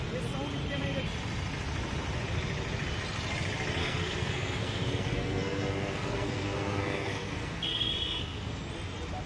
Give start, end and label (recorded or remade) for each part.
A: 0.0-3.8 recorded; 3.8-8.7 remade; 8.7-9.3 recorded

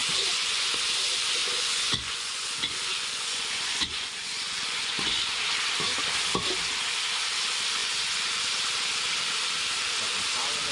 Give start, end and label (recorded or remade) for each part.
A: 0.0-0.8 remade; 0.8-1.4 recorded; 1.4-5.4 remade; 5.4-7.8 recorded; 7.8-8.4 remade; 8.4-10.7 recorded

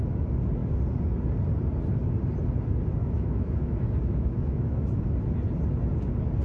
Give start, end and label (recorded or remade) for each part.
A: 0.0-3.0 recorded; 3.0-5.0 remade; 5.0-6.4 recorded

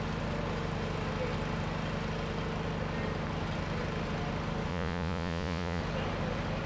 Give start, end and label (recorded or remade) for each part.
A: 0.0-4.7 recorded; 4.7-5.8 remade; 5.8-6.7 recorded

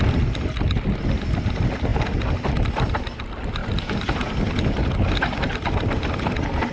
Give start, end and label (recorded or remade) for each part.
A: 0.0-6.7 recorded

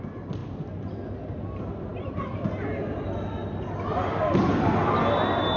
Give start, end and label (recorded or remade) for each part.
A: 0.0-5.6 recorded